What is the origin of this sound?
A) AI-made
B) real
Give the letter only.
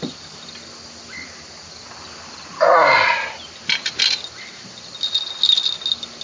B